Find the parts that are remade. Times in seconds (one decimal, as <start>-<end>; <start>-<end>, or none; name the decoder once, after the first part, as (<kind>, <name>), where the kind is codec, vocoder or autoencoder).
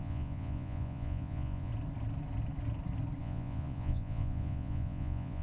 0.0-1.7 (vocoder, Vocos); 3.2-5.4